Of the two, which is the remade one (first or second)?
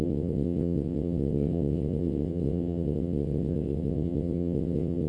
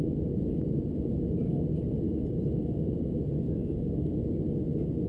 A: first